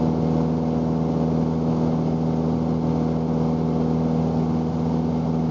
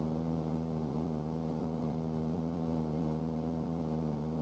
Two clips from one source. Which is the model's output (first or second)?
second